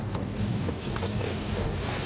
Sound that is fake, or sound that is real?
fake